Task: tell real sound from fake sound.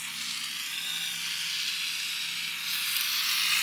real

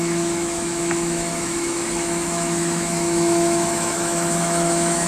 fake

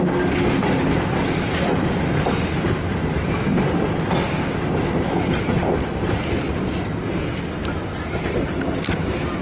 real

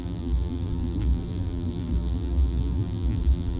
fake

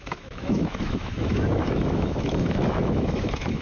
fake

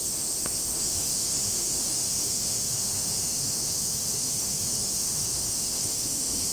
fake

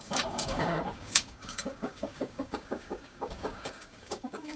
fake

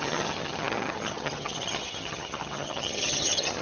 fake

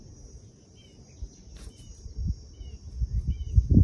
real